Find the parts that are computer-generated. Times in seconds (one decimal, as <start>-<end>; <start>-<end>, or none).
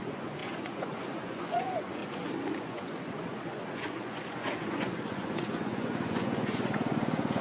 0.0-2.0; 2.6-7.4